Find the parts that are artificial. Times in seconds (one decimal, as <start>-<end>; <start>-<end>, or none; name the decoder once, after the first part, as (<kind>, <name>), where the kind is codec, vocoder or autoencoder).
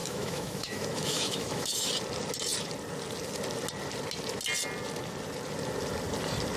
0.0-1.9 (autoencoder, DAC-VAE)